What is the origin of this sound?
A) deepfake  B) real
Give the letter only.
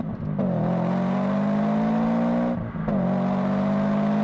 B